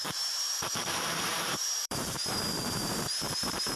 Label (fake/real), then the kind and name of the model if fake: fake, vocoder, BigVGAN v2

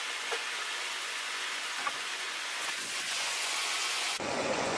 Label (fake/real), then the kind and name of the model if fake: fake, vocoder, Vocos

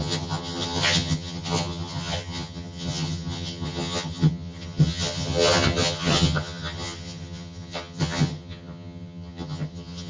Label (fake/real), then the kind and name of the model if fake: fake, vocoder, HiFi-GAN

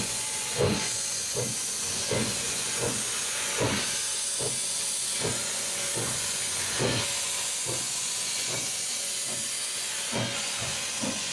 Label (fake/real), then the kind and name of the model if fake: fake, vocoder, Vocos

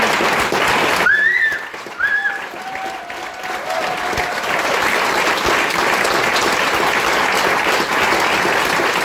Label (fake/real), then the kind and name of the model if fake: real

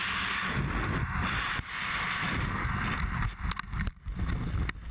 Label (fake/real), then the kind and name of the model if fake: real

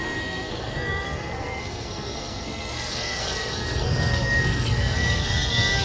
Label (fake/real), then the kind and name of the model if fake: fake, codec, SNAC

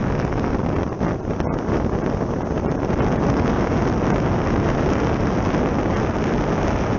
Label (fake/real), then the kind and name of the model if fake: real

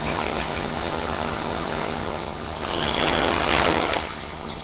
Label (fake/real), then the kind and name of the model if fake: fake, vocoder, HiFi-GAN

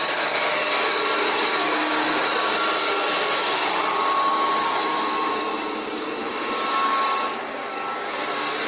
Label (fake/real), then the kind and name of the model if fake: fake, codec, DAC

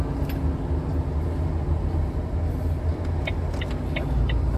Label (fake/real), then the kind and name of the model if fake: real